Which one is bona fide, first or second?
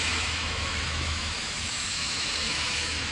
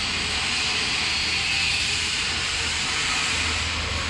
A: second